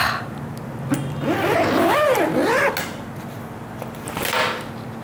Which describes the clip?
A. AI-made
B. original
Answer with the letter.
B